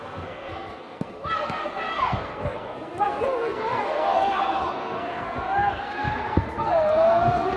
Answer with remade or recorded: remade